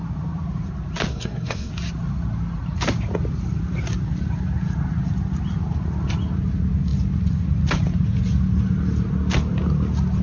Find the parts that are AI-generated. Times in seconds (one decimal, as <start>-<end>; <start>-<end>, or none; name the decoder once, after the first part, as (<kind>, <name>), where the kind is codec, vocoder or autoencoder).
1.1-1.7 (codec, SNAC)